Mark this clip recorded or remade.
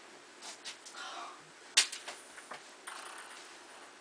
recorded